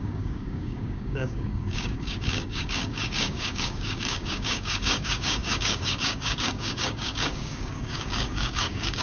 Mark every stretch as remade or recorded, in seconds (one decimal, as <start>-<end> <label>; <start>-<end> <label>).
0.0-9.0 remade